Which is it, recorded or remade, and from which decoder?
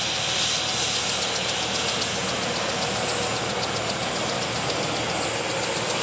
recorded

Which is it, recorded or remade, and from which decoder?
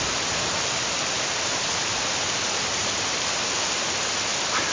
recorded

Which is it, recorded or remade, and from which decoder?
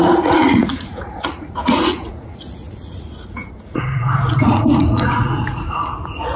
remade, vocoder, Vocos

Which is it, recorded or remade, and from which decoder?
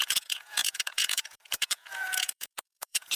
remade, vocoder, Vocos